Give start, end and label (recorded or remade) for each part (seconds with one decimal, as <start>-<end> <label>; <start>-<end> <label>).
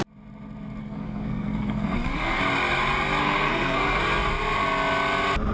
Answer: 0.0-0.8 recorded; 0.8-2.4 remade; 2.4-3.2 recorded; 3.2-4.0 remade; 4.0-5.5 recorded